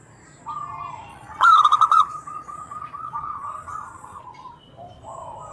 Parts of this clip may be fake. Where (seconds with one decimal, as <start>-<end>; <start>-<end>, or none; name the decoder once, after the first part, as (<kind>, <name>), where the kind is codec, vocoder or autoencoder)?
1.1-4.2 (vocoder, Vocos)